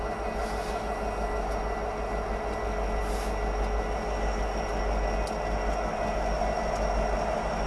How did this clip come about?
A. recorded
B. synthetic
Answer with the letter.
A